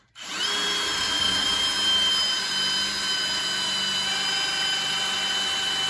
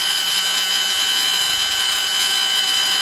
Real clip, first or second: first